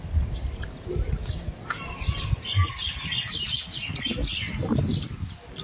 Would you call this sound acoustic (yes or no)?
yes